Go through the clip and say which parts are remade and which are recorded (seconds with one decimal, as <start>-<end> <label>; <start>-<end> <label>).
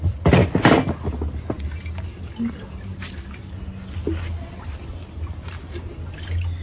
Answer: 0.0-6.6 recorded